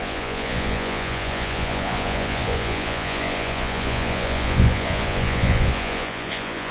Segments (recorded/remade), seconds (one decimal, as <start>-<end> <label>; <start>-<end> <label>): 0.0-6.7 remade